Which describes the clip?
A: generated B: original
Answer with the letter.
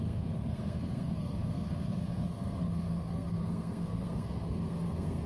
A